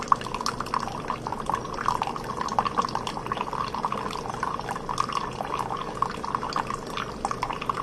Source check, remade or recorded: recorded